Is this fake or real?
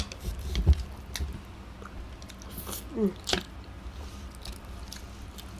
real